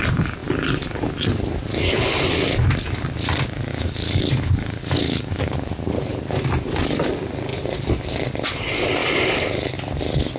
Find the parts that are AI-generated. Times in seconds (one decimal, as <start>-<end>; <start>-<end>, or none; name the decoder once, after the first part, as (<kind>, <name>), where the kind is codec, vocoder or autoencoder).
3.7-5.7 (codec, DAC)